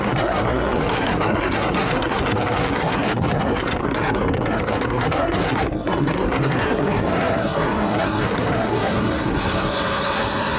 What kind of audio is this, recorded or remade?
remade